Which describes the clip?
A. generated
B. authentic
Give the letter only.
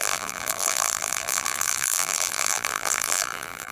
A